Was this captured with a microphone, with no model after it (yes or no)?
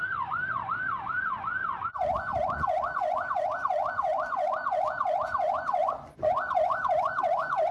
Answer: no